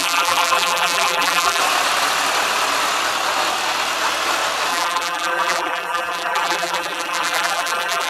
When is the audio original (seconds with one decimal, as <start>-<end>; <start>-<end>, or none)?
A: 1.6-4.7

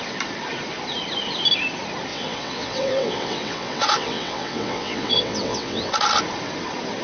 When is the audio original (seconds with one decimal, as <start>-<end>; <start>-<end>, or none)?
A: 0.0-2.1; 5.9-7.0

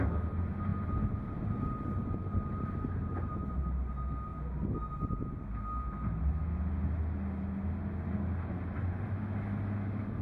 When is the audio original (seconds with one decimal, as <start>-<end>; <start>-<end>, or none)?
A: 0.0-0.7; 3.5-10.2

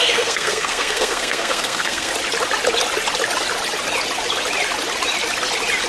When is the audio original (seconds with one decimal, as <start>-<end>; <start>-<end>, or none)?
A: 2.1-5.9